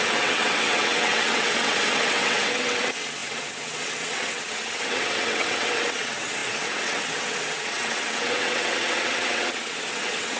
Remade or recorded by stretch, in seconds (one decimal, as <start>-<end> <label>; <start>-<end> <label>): 0.0-10.4 remade